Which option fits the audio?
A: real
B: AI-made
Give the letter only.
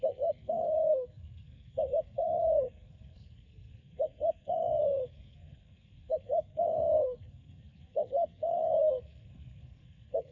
B